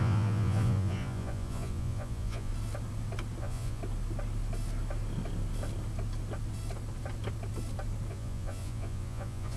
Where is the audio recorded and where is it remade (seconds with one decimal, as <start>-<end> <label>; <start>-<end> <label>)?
0.0-2.5 remade; 2.5-3.4 recorded; 3.4-3.8 remade; 3.8-8.1 recorded; 8.1-9.6 remade